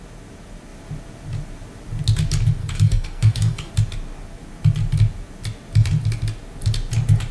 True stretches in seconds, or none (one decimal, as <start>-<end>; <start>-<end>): 0.0-2.6; 3.7-7.3